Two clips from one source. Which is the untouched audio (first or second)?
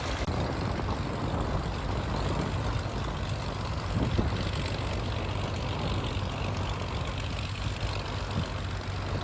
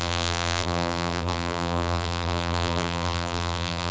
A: first